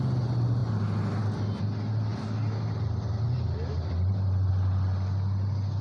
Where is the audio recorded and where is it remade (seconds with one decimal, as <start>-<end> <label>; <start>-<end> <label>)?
0.0-5.8 recorded